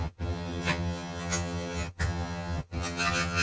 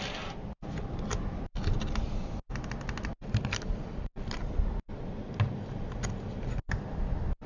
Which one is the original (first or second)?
second